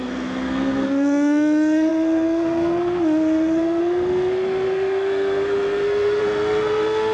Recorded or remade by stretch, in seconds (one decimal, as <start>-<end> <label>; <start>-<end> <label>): 0.0-7.1 remade